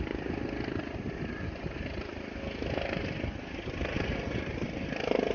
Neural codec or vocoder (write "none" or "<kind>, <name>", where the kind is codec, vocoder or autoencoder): none